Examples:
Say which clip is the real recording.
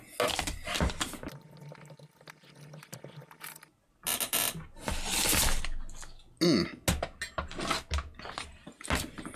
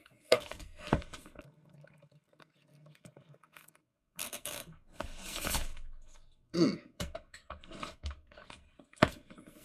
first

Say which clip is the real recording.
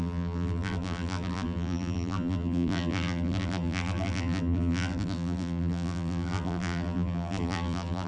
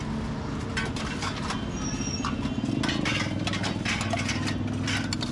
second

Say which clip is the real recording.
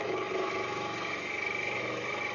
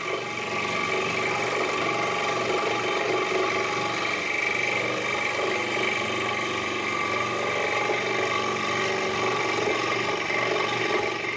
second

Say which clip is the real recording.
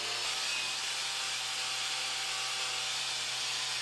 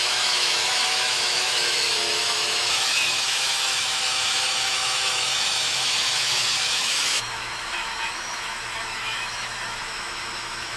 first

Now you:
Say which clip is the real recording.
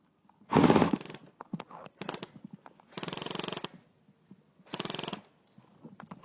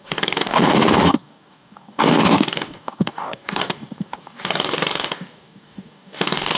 first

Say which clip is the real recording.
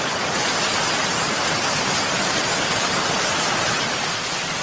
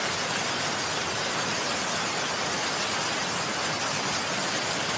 second